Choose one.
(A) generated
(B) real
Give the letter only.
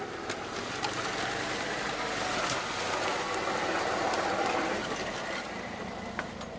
B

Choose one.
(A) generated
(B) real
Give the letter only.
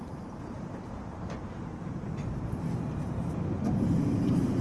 A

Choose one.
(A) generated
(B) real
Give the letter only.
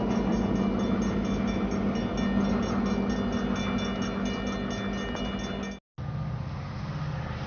B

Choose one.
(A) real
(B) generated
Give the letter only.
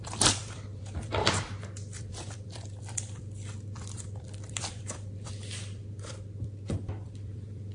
B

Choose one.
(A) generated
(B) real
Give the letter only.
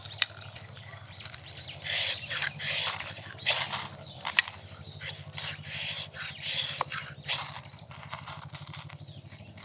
A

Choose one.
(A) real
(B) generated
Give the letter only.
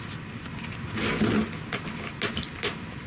A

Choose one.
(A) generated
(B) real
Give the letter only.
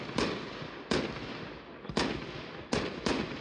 B